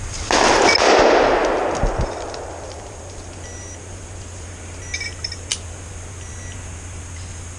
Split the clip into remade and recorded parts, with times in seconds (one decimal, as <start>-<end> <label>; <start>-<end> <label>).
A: 0.0-7.6 recorded